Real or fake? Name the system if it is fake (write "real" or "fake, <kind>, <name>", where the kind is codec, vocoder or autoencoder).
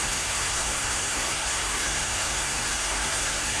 fake, codec, SNAC